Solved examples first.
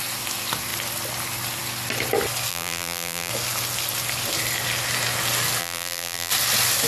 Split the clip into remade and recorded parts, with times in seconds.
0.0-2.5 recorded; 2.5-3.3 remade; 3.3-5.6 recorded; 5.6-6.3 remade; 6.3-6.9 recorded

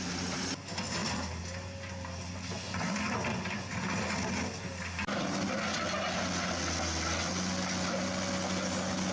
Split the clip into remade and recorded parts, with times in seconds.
0.0-9.1 recorded

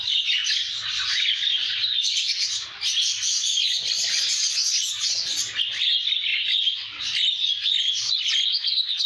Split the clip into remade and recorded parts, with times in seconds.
0.0-9.1 recorded

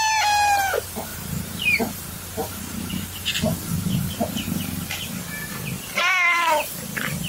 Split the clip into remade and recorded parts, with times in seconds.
0.0-1.1 recorded; 1.1-1.8 remade; 1.8-2.4 recorded; 2.4-2.9 remade; 2.9-7.3 recorded